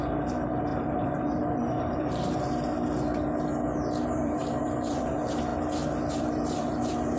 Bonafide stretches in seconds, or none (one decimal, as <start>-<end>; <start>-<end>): 2.7-4.0; 5.5-6.1